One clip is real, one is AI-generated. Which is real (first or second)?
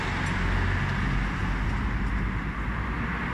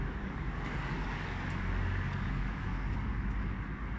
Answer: first